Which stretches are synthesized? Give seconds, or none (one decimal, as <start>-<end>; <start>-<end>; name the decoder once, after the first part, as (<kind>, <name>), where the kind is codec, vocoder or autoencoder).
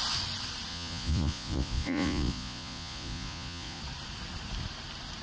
0.7-3.8 (vocoder, Vocos)